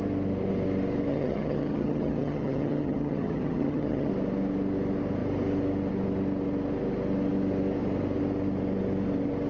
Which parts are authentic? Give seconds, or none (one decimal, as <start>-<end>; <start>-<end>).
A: 0.0-1.1; 4.1-9.5